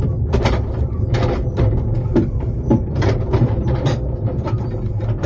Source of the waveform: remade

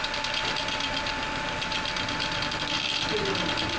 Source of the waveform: recorded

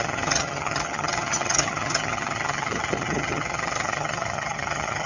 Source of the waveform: remade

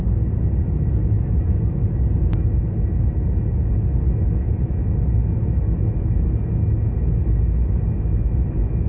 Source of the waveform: recorded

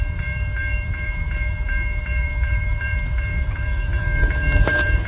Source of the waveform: remade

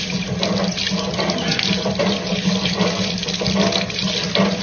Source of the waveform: recorded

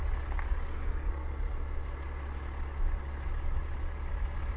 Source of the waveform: recorded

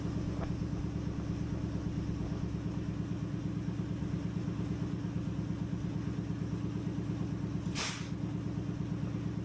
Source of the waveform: recorded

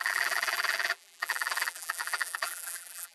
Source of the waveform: remade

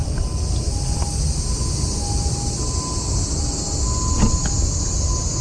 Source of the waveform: recorded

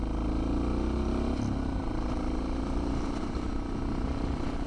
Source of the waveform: recorded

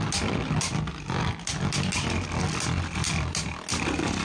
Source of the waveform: recorded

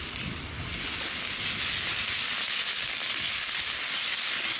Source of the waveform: recorded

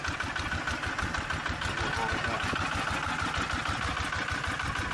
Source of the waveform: recorded